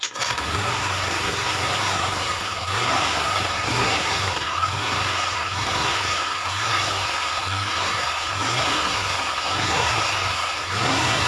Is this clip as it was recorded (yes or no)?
no